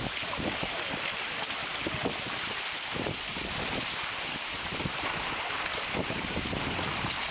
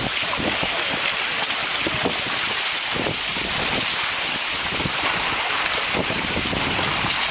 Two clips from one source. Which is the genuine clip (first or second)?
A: second